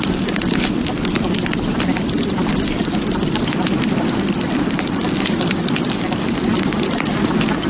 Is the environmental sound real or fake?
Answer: fake